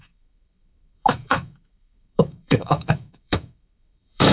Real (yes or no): no